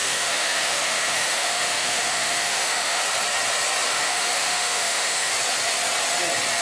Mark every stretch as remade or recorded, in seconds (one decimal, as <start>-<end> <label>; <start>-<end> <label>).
0.0-3.0 remade; 3.0-3.9 recorded; 3.9-5.3 remade; 5.3-6.6 recorded